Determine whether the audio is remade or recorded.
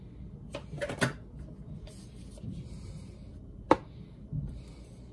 recorded